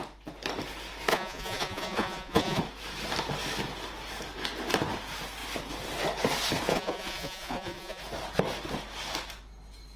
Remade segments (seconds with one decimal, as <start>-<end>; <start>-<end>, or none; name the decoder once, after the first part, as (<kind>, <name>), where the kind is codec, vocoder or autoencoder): 1.1-2.6 (vocoder, Vocos); 6.7-8.0